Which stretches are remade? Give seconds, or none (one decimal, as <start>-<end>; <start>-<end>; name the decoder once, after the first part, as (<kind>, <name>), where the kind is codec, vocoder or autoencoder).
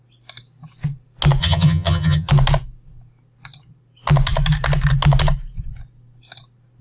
1.4-2.3 (vocoder, HiFi-GAN)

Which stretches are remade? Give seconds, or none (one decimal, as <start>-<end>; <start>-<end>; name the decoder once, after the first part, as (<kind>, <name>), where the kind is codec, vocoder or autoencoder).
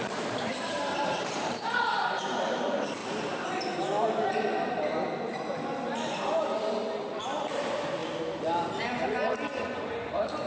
0.0-3.0 (vocoder, BigVGAN v2); 7.4-8.0; 8.8-10.5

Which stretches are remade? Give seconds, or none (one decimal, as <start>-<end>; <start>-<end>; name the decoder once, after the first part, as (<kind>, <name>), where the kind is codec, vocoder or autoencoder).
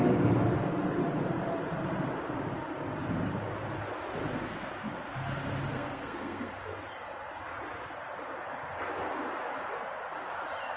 5.7-6.5 (codec, SNAC)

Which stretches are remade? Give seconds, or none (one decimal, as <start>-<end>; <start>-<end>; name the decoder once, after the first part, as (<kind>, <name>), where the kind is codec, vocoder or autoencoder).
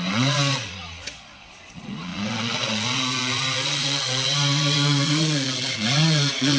0.0-6.6 (vocoder, Vocos)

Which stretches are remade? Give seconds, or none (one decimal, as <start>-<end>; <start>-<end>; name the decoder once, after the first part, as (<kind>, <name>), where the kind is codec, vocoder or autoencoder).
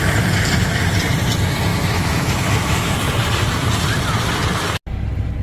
1.7-3.0 (autoencoder, DAC-VAE)